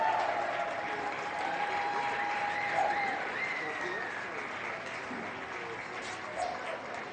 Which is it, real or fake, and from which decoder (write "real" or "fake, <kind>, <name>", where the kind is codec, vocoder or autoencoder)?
real